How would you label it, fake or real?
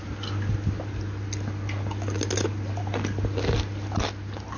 real